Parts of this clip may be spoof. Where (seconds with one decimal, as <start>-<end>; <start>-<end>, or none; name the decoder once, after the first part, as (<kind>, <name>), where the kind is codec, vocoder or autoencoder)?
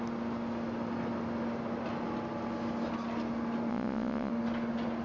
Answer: 3.7-4.3 (vocoder, Vocos)